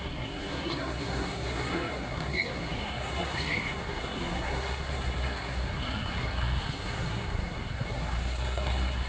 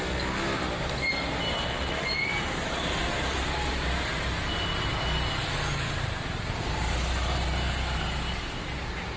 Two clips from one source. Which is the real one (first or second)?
second